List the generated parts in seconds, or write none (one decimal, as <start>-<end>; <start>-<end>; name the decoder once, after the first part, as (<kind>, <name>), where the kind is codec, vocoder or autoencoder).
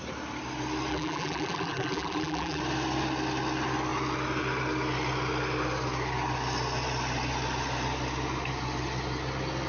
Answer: 0.9-2.6 (vocoder, BigVGAN v2)